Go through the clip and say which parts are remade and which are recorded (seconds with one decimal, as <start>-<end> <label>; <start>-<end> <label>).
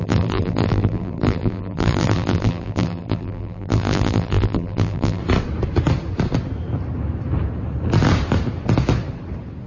0.0-5.2 remade; 5.2-9.7 recorded